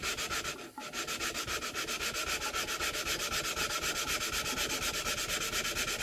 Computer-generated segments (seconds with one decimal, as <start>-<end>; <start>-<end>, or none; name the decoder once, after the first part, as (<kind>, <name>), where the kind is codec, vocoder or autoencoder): none